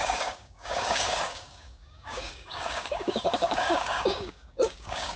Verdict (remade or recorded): remade